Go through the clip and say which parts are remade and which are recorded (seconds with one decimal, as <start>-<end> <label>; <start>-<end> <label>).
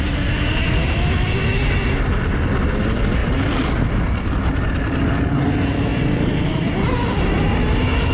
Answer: 0.0-0.8 recorded; 0.8-1.3 remade; 1.3-8.1 recorded